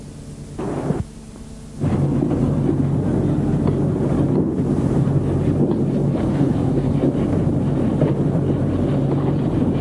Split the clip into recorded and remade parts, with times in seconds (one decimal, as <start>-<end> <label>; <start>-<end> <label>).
0.0-6.3 recorded; 6.3-6.9 remade; 6.9-9.8 recorded